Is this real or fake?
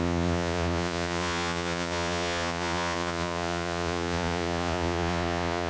fake